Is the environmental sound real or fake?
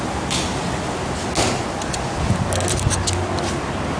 real